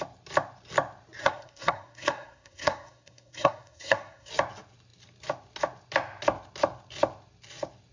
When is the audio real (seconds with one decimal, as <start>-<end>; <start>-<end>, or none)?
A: 0.0-1.2; 4.3-7.9